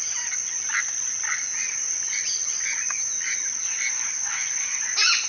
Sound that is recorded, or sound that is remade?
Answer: recorded